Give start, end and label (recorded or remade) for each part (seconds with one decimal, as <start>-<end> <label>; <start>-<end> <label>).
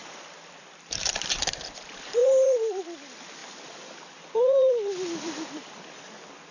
0.0-1.4 remade; 1.4-2.2 recorded; 2.2-2.8 remade; 2.8-3.4 recorded; 3.4-6.0 remade; 6.0-6.5 recorded